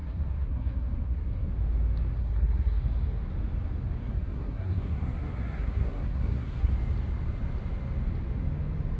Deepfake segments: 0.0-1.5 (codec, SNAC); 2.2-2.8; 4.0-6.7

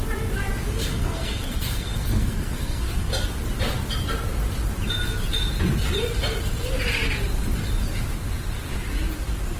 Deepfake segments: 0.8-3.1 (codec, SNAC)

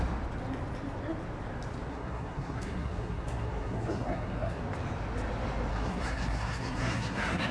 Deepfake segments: 1.9-4.6 (codec, SNAC); 5.7-7.5

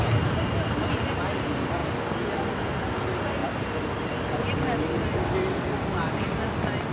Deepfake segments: none